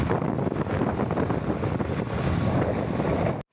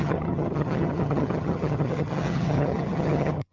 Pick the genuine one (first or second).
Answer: first